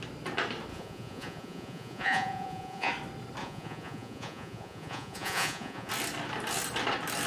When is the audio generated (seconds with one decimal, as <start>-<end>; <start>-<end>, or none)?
0.7-2.9; 3.4-5.9